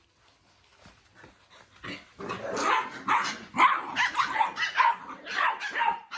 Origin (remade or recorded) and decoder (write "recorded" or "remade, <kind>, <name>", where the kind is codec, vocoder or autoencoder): recorded